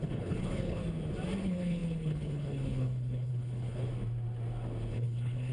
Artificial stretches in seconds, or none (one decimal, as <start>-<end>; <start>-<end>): 0.0-0.8; 1.4-3.9; 4.9-5.5